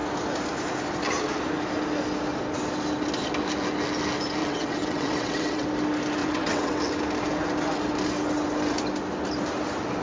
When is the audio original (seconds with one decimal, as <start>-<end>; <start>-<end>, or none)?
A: 0.0-4.4; 5.7-6.2; 6.8-10.0

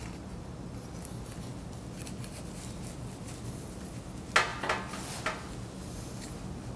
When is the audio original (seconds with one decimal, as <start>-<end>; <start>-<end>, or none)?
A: 0.0-6.8